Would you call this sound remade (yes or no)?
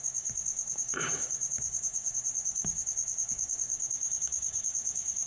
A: yes